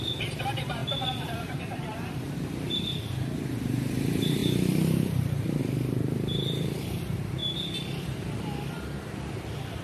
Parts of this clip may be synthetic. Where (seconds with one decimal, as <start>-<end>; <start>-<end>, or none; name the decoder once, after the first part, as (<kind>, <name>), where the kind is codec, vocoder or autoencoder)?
0.0-0.8 (vocoder, BigVGAN v2); 1.5-7.4; 9.0-9.8